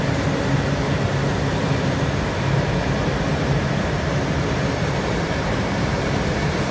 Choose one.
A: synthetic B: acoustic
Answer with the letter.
A